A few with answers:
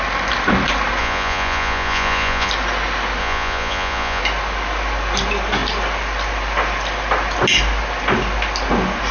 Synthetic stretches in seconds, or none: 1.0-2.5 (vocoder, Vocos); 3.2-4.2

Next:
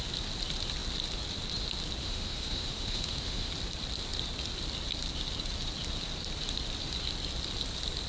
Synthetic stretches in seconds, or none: 2.0-3.5 (autoencoder, DAC-VAE)

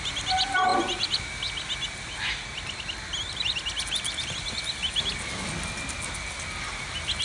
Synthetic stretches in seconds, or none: none

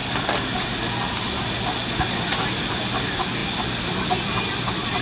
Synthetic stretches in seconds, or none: none

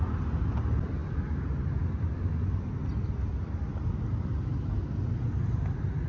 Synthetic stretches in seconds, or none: none

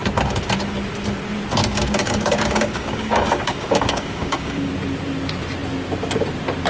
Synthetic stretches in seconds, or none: 1.6-4.7 (codec, DAC)